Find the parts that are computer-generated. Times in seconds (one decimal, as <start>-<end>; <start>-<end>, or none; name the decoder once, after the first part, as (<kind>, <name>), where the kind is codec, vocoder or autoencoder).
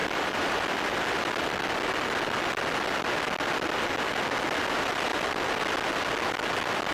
0.0-0.7 (vocoder, BigVGAN v2)